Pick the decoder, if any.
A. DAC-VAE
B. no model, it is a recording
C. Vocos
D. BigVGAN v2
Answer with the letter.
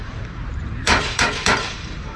D